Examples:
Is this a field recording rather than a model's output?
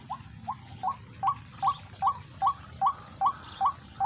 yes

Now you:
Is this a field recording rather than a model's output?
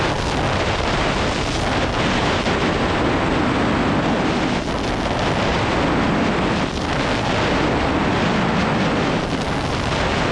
yes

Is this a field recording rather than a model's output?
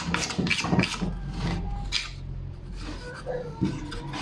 yes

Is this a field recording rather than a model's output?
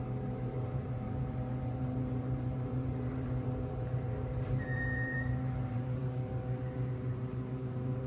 no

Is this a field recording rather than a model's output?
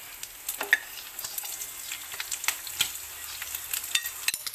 yes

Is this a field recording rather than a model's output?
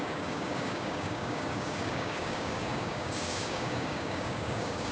no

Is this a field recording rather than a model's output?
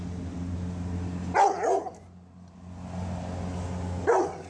yes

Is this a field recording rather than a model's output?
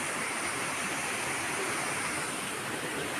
yes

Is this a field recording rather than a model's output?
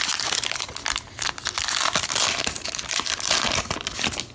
yes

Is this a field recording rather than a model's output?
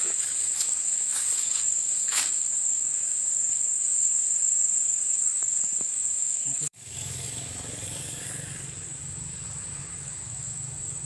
no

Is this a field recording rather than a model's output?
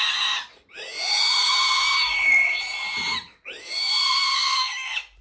yes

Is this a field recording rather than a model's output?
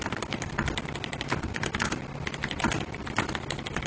yes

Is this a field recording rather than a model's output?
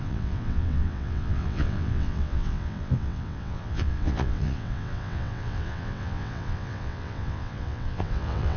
no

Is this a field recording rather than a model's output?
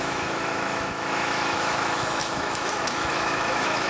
no